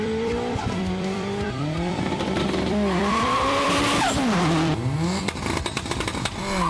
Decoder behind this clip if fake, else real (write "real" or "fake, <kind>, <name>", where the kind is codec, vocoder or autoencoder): fake, vocoder, BigVGAN v2